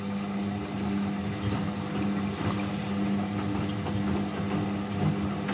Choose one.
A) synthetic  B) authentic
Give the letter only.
B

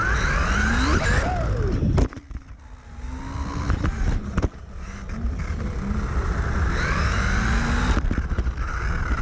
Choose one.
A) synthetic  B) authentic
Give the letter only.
B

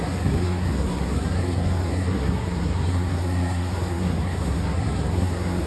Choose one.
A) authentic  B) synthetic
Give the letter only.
B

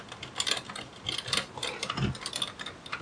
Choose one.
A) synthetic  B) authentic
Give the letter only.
B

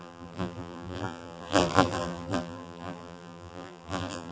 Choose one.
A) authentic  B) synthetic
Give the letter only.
B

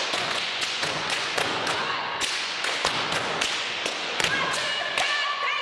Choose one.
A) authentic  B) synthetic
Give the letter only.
B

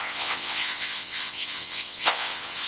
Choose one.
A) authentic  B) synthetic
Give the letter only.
B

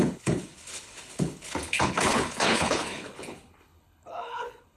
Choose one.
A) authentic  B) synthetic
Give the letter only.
B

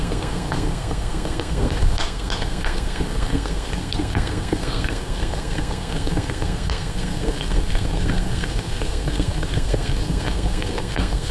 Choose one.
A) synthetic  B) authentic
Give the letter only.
A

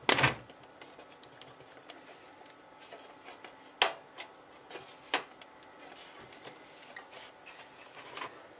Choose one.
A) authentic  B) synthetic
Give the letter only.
A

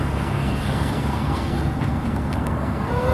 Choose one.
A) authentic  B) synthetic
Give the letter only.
B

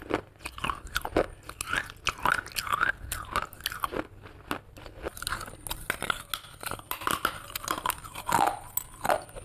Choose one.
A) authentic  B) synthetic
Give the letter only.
A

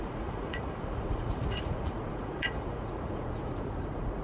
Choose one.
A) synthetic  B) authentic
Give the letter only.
A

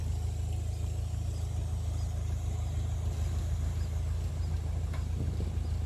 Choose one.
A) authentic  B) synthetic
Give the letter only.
A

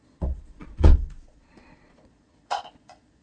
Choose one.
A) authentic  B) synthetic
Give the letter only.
B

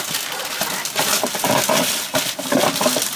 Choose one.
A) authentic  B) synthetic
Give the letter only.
A